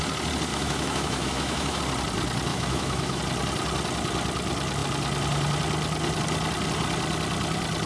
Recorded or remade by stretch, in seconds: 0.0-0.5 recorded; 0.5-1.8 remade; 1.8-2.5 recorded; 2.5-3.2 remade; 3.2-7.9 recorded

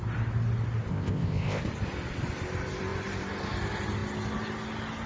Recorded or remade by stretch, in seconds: 0.0-0.9 recorded; 0.9-1.6 remade; 1.6-5.1 recorded

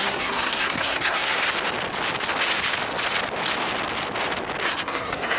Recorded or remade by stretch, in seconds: 0.0-1.4 remade; 1.4-4.6 recorded; 4.6-5.4 remade

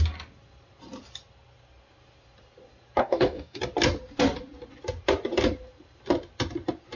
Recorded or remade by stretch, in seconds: 0.0-3.0 recorded; 3.0-3.6 remade; 3.6-7.0 recorded